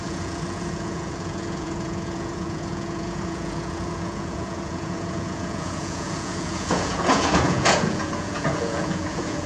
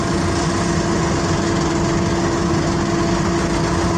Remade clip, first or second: first